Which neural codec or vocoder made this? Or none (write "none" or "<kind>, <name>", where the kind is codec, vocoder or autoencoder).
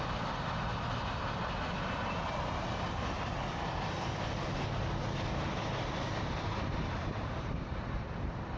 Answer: none